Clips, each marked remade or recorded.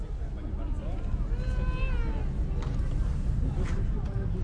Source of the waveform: recorded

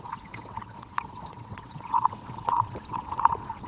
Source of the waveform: remade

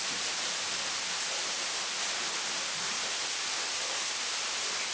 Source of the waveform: recorded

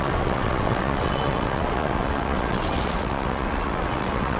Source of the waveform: remade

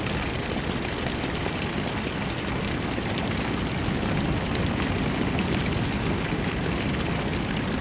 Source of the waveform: recorded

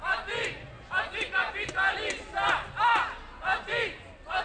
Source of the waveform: recorded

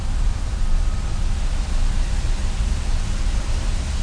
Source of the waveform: recorded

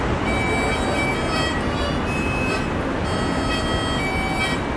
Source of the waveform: recorded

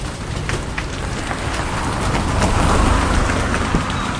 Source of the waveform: recorded